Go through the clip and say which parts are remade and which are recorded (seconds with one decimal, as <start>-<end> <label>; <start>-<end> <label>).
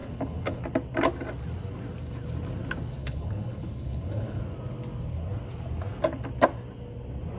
0.0-0.6 remade; 0.6-3.0 recorded; 3.0-4.4 remade; 4.4-7.4 recorded